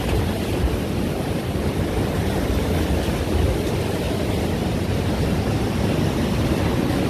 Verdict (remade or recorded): recorded